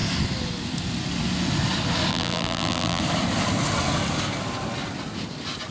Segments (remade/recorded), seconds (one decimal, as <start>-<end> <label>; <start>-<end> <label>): 0.0-2.1 recorded; 2.1-3.0 remade; 3.0-5.7 recorded